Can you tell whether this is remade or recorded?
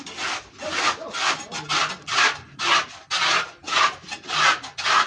recorded